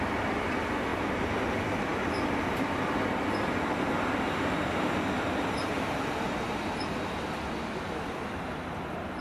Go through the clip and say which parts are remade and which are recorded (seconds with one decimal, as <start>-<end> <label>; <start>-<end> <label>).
0.0-0.9 remade; 0.9-1.5 recorded; 1.5-1.9 remade; 1.9-5.6 recorded; 5.6-9.2 remade